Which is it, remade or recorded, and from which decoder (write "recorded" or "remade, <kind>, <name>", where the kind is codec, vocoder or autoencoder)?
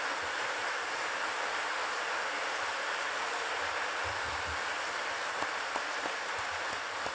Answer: recorded